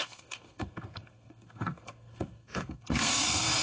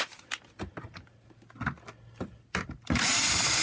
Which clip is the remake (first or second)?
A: first